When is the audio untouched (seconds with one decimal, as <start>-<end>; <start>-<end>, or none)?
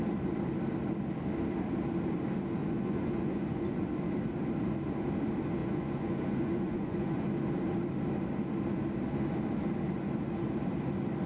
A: 0.0-2.6; 3.8-5.6; 7.3-11.3